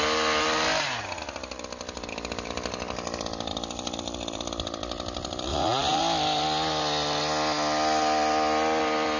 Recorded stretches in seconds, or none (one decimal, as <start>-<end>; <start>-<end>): 0.0-5.5; 6.0-9.2